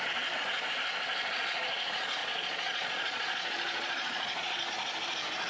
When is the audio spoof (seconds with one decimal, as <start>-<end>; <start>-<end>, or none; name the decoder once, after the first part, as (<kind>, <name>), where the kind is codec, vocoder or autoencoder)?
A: 2.2-4.7 (vocoder, Vocos)